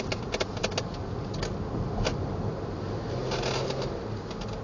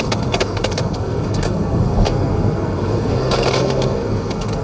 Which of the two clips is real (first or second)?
first